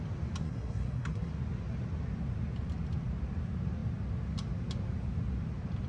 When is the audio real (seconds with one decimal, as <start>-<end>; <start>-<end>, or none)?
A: 0.0-0.4; 1.3-5.9